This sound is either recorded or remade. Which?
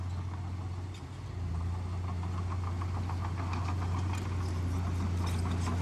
recorded